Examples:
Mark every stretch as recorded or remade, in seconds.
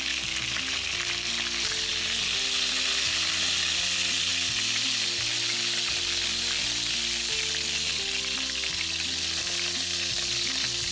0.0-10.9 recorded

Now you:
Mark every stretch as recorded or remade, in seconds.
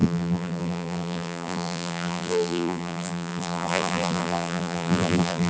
0.0-5.5 remade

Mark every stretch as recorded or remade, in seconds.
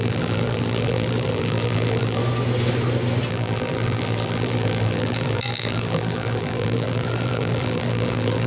0.0-2.2 remade; 2.2-3.3 recorded; 3.3-8.5 remade